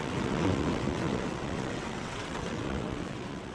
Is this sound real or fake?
fake